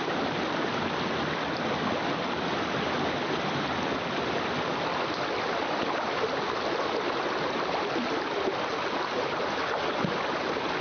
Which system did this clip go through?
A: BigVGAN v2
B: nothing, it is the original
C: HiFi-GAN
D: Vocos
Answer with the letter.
B